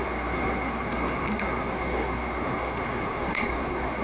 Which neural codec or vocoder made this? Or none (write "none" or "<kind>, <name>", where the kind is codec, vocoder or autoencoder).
codec, SNAC